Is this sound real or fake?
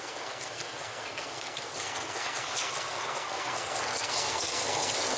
fake